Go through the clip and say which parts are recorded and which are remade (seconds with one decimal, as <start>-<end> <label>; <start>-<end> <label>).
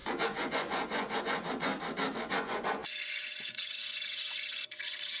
0.0-1.7 remade; 1.7-2.3 recorded; 2.3-5.2 remade